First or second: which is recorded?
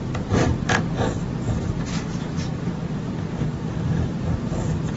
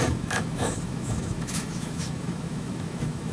first